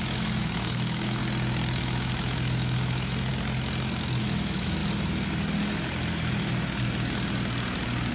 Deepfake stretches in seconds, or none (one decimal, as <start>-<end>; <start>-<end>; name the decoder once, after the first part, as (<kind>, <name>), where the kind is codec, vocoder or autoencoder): 0.0-1.2 (autoencoder, DAC-VAE); 1.8-3.3; 4.2-4.8